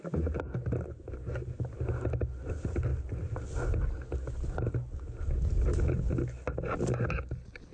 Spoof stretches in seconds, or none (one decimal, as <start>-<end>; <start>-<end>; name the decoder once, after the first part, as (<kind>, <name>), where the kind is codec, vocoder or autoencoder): none